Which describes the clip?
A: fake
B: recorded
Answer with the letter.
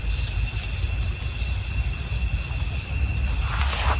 B